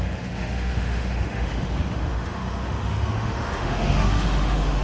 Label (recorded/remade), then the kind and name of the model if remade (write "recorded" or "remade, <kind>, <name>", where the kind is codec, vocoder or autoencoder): remade, autoencoder, DAC-VAE